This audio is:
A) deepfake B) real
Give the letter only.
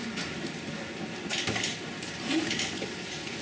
B